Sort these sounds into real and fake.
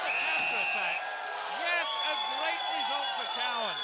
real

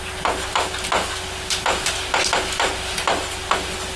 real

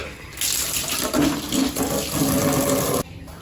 real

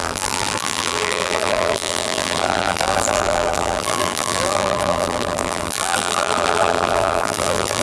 fake